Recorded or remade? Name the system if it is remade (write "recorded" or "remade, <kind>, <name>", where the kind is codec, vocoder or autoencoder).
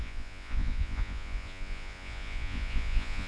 remade, vocoder, Vocos